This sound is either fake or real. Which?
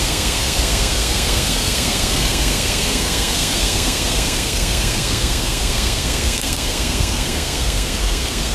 fake